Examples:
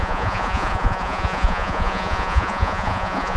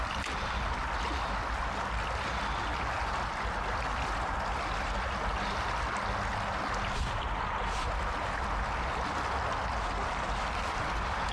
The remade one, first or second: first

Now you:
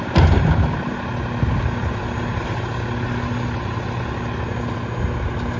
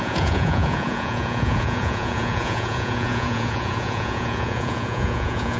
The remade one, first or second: second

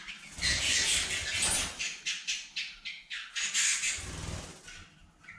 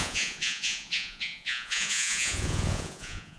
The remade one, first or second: second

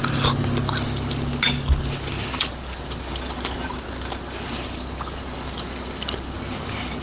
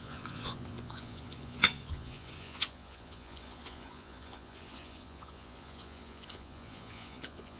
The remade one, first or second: second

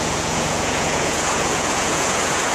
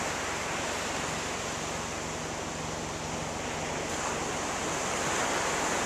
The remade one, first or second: first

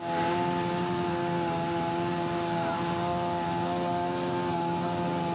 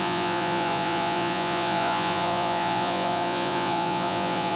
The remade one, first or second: second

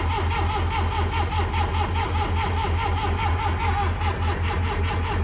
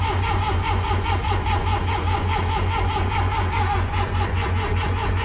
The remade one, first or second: second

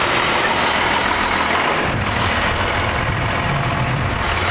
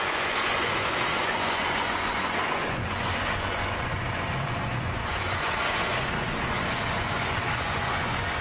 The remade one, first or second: second